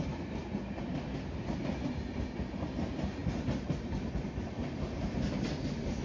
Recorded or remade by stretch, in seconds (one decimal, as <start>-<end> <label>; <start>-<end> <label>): 0.0-3.2 recorded; 3.2-4.5 remade; 4.5-6.0 recorded